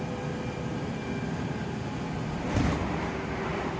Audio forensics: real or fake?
real